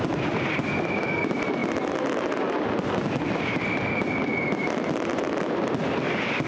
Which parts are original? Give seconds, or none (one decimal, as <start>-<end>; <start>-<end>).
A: 0.0-6.5